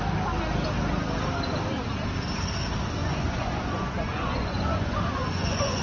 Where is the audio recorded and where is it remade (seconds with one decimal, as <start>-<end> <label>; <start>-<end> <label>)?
0.0-3.0 recorded; 3.0-5.8 remade